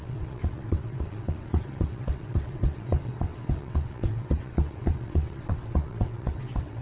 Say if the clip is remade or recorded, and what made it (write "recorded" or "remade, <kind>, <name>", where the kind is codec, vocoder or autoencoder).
remade, vocoder, WaveNeXt